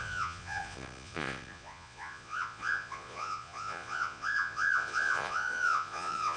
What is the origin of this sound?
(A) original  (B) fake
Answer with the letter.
B